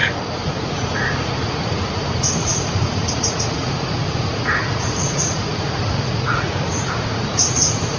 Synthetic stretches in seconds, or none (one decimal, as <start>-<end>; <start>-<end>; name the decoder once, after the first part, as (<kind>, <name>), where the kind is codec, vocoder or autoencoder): 0.7-8.0 (vocoder, Vocos)